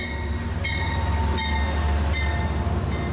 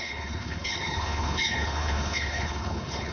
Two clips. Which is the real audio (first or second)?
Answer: first